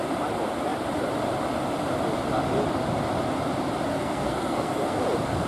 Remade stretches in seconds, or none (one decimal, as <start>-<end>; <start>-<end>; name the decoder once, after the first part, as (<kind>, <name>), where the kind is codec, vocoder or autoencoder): 3.9-5.0 (codec, SNAC)